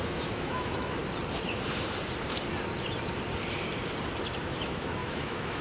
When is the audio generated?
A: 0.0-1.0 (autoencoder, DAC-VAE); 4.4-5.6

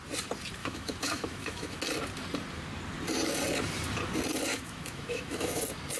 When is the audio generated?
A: 0.6-1.8 (autoencoder, DAC-VAE); 4.5-5.6

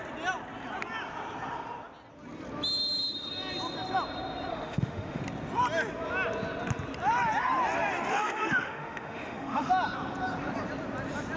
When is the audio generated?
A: 4.5-5.2 (autoencoder, DAC-VAE); 8.1-9.7

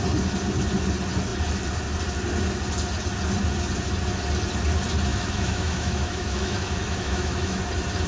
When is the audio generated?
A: 5.1-7.6 (autoencoder, DAC-VAE)